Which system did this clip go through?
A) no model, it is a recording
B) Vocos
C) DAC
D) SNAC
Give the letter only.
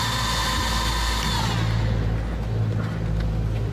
A